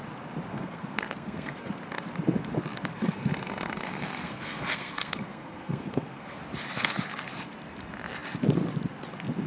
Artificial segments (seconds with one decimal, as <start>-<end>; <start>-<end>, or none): 0.5-1.7; 2.9-6.4